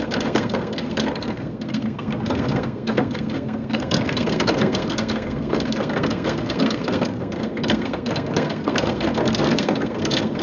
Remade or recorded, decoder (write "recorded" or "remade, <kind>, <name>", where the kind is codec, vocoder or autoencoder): remade, codec, SNAC